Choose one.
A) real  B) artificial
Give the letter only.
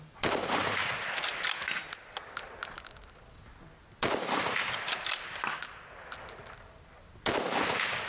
A